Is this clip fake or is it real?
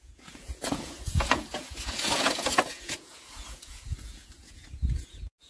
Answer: fake